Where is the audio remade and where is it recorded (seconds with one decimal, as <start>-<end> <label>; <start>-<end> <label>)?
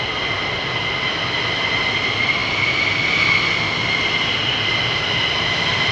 0.0-5.9 recorded